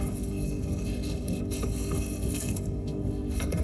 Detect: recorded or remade remade